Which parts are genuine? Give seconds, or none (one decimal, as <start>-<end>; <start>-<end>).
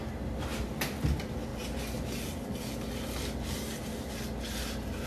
0.0-5.1